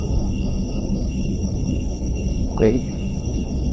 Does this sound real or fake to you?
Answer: fake